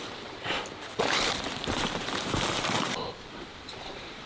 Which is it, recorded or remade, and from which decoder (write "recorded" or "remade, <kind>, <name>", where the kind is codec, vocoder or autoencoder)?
remade, vocoder, BigVGAN v2